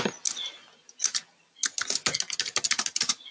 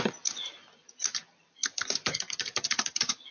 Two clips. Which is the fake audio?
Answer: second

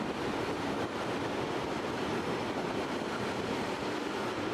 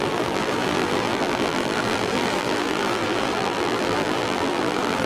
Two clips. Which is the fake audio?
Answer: second